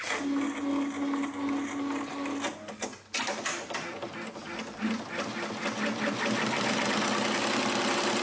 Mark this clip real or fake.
real